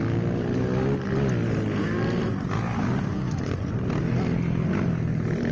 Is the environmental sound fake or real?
real